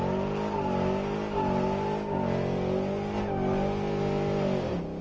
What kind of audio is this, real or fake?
real